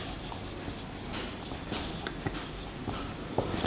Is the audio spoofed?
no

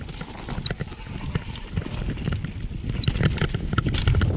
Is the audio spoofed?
no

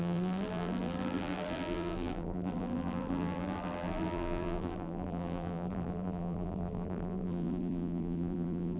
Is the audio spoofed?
yes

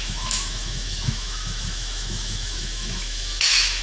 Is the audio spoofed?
yes